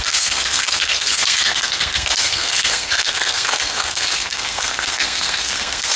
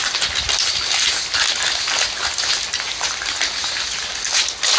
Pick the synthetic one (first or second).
first